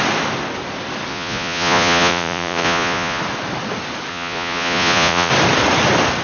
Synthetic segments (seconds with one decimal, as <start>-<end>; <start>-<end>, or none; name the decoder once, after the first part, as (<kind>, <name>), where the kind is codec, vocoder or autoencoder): 1.1-3.2 (vocoder, Vocos); 4.1-5.3